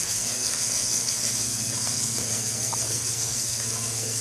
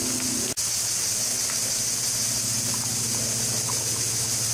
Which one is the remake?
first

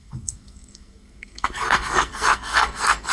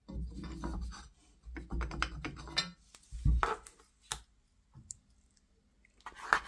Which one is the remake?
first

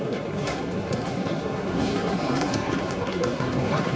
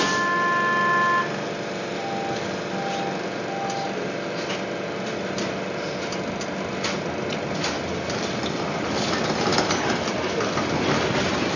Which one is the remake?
first